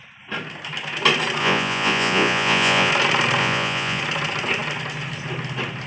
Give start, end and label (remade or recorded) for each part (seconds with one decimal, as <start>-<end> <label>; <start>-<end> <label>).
0.0-1.4 recorded; 1.4-2.9 remade; 2.9-3.4 recorded; 3.4-4.0 remade; 4.0-5.9 recorded